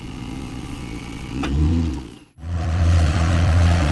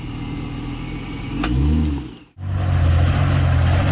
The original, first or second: second